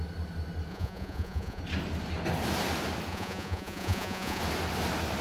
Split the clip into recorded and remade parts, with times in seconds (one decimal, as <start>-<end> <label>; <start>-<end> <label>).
0.0-0.7 recorded; 0.7-1.6 remade; 1.6-3.1 recorded; 3.1-4.4 remade; 4.4-5.2 recorded